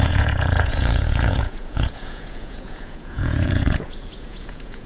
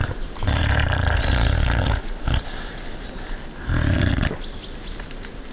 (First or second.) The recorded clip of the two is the second